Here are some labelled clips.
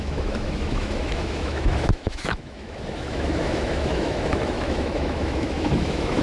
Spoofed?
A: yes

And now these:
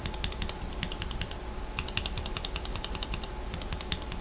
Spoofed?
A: no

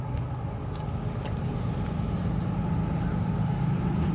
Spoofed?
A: no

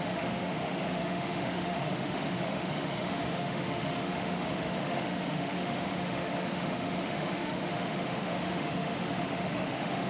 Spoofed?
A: yes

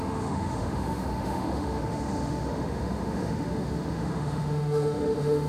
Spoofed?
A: yes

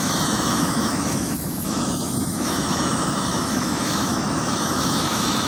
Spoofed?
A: yes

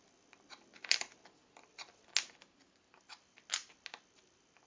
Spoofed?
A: no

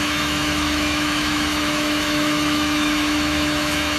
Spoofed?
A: yes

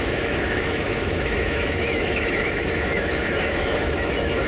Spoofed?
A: yes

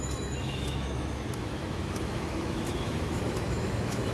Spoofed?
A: yes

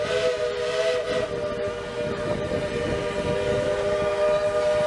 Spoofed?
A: no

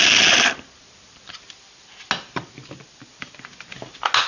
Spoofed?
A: no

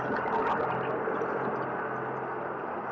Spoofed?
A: no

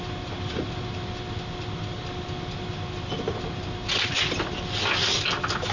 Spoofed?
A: no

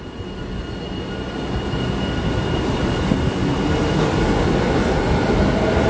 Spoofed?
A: no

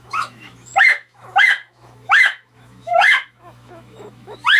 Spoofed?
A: yes